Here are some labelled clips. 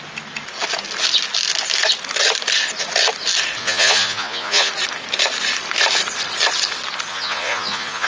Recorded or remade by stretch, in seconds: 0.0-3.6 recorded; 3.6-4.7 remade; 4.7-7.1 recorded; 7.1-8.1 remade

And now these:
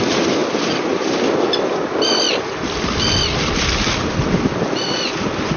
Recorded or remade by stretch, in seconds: 0.0-5.6 recorded

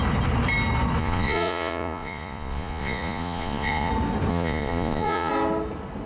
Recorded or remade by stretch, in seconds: 0.0-1.0 recorded; 1.0-3.9 remade; 3.9-4.3 recorded; 4.3-5.3 remade; 5.3-6.1 recorded

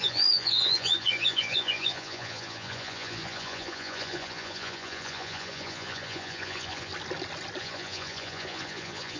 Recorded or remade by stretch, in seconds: 0.0-6.9 remade; 6.9-7.6 recorded; 7.6-9.2 remade